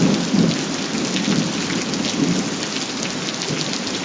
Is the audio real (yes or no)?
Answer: yes